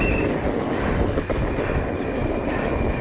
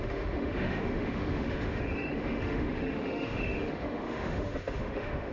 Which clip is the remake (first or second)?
second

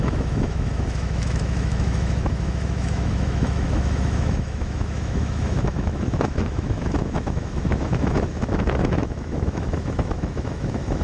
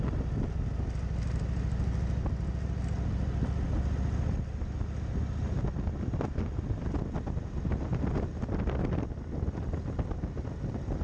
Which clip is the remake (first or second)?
first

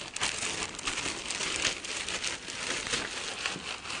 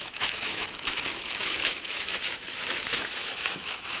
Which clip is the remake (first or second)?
second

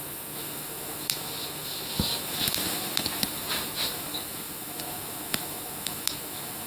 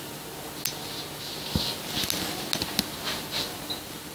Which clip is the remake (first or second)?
first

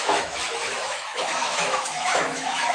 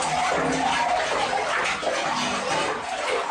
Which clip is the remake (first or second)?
first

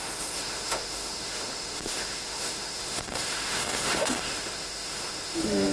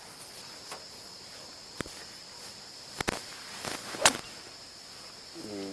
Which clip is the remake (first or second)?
first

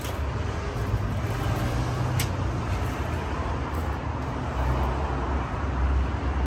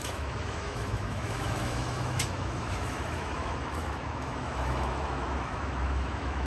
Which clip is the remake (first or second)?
second